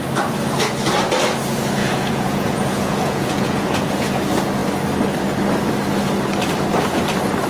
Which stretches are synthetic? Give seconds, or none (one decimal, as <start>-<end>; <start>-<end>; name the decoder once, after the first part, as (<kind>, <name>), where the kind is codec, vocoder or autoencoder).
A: 1.8-3.9 (vocoder, Vocos)